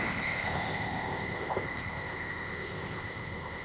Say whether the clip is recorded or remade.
remade